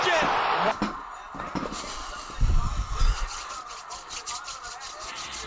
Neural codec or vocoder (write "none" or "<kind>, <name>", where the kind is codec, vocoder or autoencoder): none